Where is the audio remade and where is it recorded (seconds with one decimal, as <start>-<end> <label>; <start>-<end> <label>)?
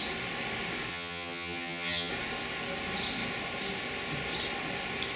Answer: 0.0-0.9 recorded; 0.9-2.1 remade; 2.1-5.2 recorded